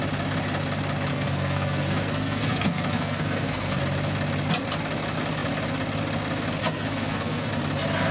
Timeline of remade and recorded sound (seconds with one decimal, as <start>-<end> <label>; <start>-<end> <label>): 0.0-1.1 recorded; 1.1-3.8 remade; 3.8-6.6 recorded; 6.6-7.5 remade; 7.5-8.1 recorded